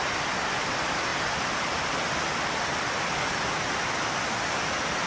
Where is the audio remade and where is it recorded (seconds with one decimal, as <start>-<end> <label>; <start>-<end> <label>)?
0.0-5.1 recorded